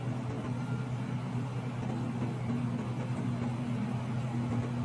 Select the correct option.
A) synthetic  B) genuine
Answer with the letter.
B